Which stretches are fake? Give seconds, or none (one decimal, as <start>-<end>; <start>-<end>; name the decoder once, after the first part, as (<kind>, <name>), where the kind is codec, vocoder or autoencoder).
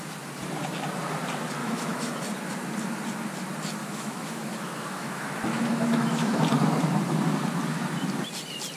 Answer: 1.6-2.2 (autoencoder, DAC-VAE); 3.8-6.4